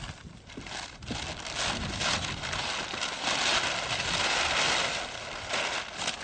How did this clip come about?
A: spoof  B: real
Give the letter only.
B